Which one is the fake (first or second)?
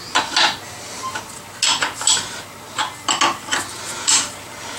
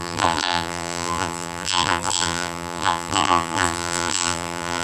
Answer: second